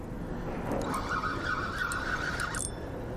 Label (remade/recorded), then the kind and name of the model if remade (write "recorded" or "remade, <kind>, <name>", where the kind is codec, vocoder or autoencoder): recorded